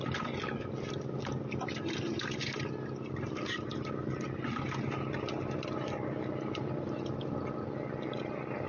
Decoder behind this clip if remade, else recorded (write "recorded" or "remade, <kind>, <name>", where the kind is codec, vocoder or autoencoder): recorded